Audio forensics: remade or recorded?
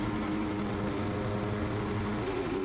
recorded